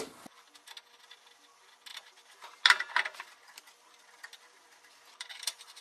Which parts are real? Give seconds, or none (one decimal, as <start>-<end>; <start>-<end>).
0.0-1.9

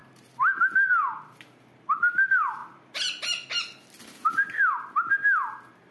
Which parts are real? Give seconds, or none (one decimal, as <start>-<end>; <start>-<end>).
0.6-5.9

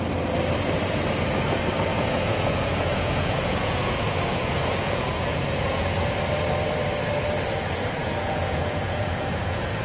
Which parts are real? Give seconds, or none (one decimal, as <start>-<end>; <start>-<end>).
0.0-1.9; 6.2-8.0

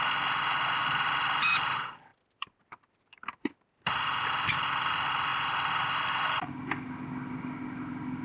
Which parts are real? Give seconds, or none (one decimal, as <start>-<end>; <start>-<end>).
0.0-8.2

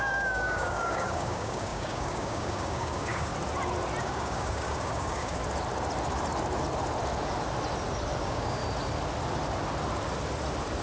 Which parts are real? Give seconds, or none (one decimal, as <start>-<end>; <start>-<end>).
3.3-4.0; 5.4-8.2; 8.6-10.8